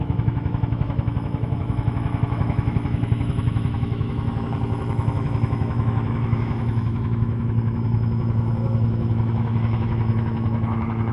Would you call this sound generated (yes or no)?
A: yes